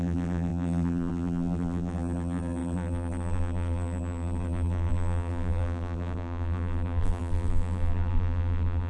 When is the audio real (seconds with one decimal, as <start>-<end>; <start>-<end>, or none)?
none